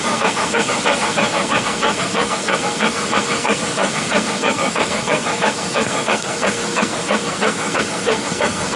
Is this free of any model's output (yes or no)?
no